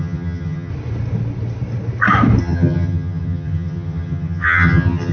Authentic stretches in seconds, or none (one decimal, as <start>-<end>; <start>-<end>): 0.7-2.4